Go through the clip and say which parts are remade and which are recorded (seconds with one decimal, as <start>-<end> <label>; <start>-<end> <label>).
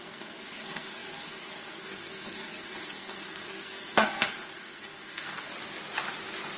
0.0-5.5 remade; 5.5-6.6 recorded